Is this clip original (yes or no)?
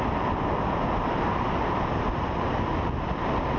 yes